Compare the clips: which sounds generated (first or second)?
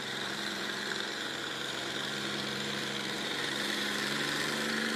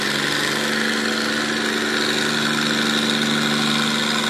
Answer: first